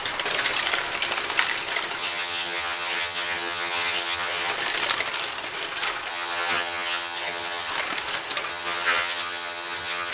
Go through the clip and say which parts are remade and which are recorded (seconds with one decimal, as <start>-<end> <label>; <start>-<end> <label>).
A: 0.0-2.0 recorded; 2.0-4.5 remade; 4.5-6.1 recorded; 6.1-7.7 remade; 7.7-8.5 recorded; 8.5-10.1 remade